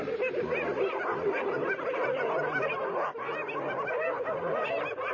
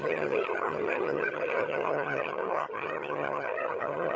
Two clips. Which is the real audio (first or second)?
first